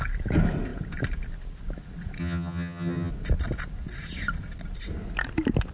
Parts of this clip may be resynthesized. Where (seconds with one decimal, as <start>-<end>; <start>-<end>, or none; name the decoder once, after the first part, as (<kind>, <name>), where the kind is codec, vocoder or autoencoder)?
2.2-3.1 (vocoder, HiFi-GAN)